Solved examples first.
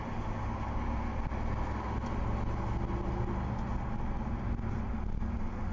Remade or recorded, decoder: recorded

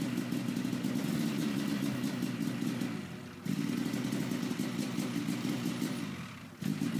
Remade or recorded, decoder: recorded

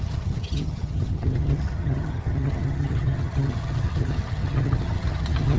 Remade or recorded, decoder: remade, vocoder, HiFi-GAN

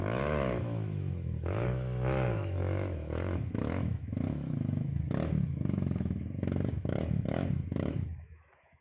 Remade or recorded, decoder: remade, autoencoder, DAC-VAE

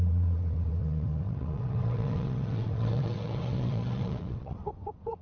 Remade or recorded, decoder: remade, vocoder, WaveNeXt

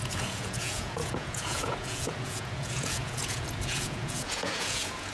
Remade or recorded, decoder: remade, vocoder, Vocos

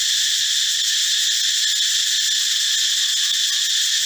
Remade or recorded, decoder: recorded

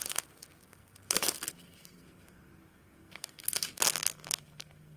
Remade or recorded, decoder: remade, codec, SNAC